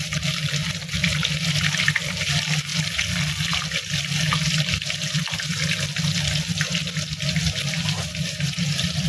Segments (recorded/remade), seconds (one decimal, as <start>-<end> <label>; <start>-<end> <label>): 0.0-0.6 remade; 0.6-2.1 recorded; 2.1-2.7 remade; 2.7-7.7 recorded; 7.7-9.1 remade